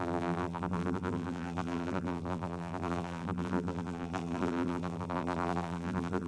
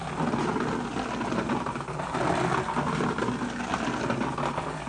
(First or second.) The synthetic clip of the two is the first